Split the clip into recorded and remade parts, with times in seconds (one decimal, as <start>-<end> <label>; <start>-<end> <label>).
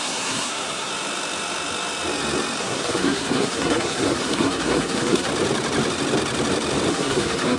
0.0-0.9 remade; 0.9-2.6 recorded; 2.6-5.3 remade; 5.3-6.9 recorded; 6.9-7.6 remade